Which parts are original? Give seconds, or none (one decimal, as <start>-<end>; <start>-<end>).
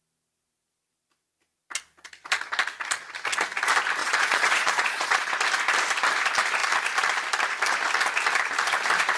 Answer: 0.0-4.0; 5.3-9.2